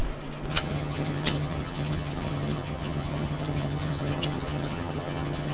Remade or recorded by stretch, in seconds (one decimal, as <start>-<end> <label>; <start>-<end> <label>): 0.0-0.5 recorded; 0.5-5.5 remade